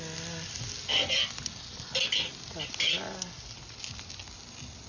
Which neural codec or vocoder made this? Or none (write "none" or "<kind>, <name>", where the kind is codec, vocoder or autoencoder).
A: none